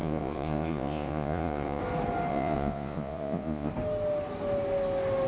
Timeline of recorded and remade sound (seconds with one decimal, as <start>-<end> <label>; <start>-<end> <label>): 0.0-1.8 remade; 1.8-2.3 recorded; 2.3-3.7 remade; 3.7-5.3 recorded